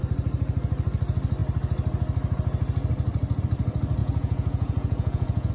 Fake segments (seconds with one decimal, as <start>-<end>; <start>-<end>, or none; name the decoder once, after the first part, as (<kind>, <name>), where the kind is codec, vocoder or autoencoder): 4.0-5.5 (vocoder, Vocos)